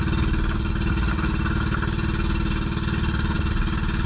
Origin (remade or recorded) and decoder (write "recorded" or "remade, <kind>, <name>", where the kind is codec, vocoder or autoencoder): recorded